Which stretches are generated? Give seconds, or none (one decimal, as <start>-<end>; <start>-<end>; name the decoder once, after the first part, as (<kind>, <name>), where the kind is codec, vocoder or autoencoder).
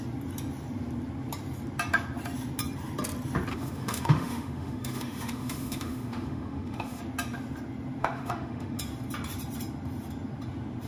3.5-7.0 (autoencoder, DAC-VAE); 8.0-8.8